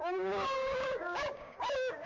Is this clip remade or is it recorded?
remade